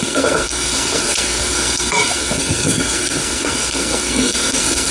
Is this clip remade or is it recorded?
remade